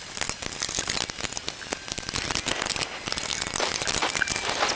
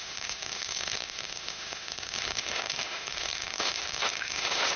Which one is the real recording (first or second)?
first